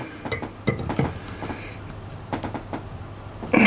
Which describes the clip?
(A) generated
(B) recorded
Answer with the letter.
B